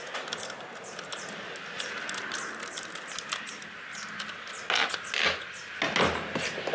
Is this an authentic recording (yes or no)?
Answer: yes